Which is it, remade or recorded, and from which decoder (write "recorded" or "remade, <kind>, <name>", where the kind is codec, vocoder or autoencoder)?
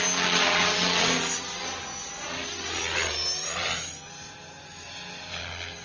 recorded